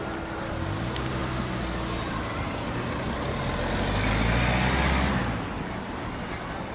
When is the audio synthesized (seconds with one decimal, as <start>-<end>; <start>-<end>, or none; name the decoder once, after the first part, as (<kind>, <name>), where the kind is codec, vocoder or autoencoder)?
none